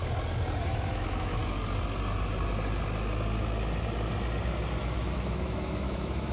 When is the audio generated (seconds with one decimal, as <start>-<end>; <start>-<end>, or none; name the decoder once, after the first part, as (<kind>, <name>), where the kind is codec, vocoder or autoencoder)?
0.6-1.4 (autoencoder, DAC-VAE); 4.8-6.3